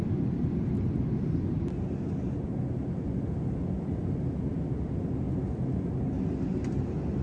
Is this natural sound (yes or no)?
yes